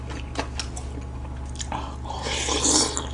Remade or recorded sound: recorded